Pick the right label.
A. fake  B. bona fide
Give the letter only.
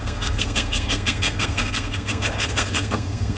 A